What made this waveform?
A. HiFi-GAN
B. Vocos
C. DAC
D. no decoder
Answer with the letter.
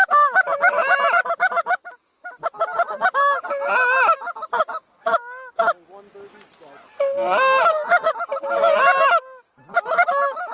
D